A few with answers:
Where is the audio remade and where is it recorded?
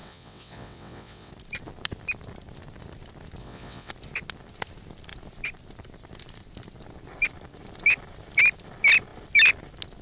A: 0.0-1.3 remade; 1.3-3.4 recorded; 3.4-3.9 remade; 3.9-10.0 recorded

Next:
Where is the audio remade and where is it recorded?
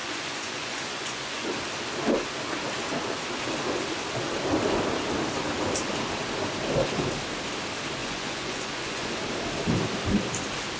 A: 0.0-1.5 remade; 1.5-8.0 recorded; 8.0-9.2 remade; 9.2-10.8 recorded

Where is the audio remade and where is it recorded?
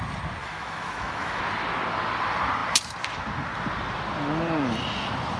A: 0.0-0.4 recorded; 0.4-1.4 remade; 1.4-5.4 recorded